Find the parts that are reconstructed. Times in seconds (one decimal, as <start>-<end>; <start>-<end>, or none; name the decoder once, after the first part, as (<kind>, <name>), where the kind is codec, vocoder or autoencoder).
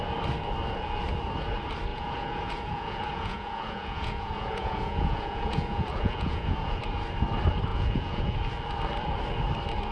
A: 1.9-6.8 (vocoder, Vocos); 7.7-8.4